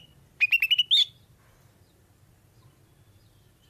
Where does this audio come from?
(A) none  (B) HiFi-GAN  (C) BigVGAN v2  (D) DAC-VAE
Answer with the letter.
A